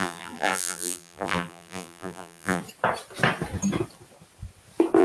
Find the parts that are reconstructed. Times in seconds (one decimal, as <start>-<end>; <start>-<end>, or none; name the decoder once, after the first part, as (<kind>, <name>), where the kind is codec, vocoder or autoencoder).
0.0-2.6 (vocoder, BigVGAN v2)